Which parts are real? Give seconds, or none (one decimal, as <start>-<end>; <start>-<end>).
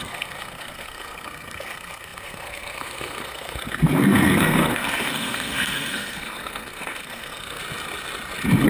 7.6-8.7